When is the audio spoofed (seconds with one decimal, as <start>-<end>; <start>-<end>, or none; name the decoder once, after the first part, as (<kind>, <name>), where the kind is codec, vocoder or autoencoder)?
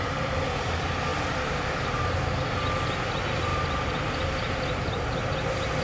1.1-2.0 (vocoder, BigVGAN v2); 3.5-5.3